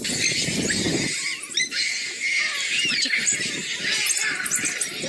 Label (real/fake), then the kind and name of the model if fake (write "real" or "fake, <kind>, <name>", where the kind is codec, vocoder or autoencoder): real